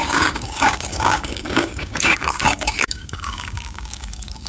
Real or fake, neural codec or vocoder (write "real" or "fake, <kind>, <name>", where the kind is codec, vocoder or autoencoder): fake, codec, DAC